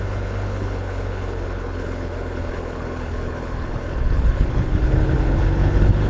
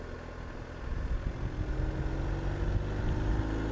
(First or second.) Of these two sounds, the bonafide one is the second